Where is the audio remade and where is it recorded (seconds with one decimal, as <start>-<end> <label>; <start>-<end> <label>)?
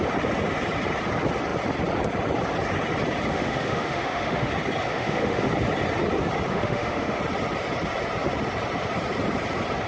0.0-3.3 recorded; 3.3-4.5 remade; 4.5-4.9 recorded; 4.9-5.5 remade; 5.5-6.5 recorded; 6.5-7.2 remade; 7.2-9.9 recorded